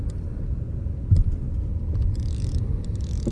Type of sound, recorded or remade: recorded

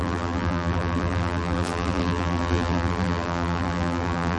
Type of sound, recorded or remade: remade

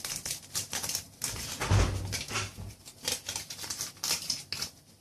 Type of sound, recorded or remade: recorded